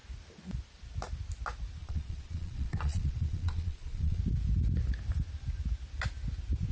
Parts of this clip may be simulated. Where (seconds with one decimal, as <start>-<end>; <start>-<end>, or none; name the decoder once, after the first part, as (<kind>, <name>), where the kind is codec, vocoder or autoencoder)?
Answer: 1.8-4.2 (vocoder, Vocos)